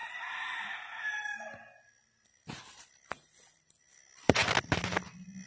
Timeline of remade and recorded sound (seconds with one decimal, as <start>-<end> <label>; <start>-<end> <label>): 0.0-5.5 recorded